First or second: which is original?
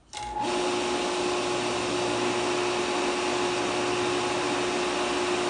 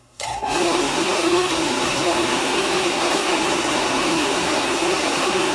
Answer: first